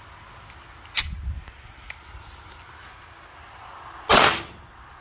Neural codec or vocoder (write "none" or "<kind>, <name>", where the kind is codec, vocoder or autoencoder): none